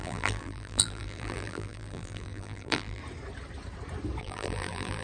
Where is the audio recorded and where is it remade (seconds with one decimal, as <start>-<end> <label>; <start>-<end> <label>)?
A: 0.0-3.0 remade; 3.0-4.2 recorded; 4.2-5.0 remade

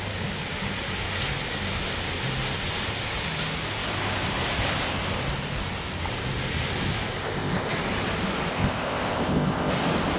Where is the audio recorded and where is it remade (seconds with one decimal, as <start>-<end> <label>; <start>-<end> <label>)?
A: 0.0-7.2 recorded; 7.2-7.7 remade; 7.7-8.5 recorded; 8.5-9.7 remade; 9.7-10.2 recorded

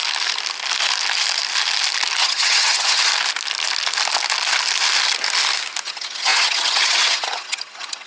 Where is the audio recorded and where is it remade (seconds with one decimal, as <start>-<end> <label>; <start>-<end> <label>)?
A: 0.0-2.2 recorded; 2.2-3.1 remade; 3.1-5.8 recorded; 5.8-8.1 remade